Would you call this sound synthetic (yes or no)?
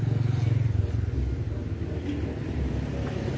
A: no